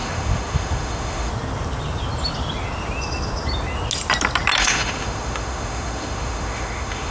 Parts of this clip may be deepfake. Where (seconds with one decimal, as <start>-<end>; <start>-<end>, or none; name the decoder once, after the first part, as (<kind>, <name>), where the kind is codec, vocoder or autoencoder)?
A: 0.0-1.3 (autoencoder, DAC-VAE); 4.6-7.1